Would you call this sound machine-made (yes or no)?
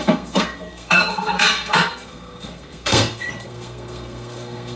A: yes